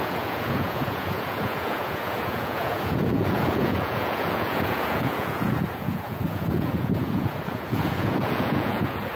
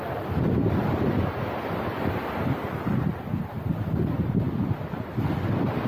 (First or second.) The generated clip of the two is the first